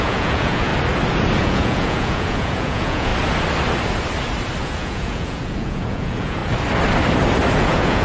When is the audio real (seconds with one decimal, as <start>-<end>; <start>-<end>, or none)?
0.7-1.4; 3.1-4.6; 6.4-7.6